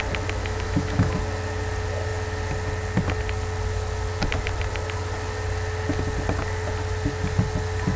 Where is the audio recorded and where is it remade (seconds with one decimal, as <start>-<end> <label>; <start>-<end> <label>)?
0.0-0.4 recorded; 0.4-1.1 remade; 1.1-8.0 recorded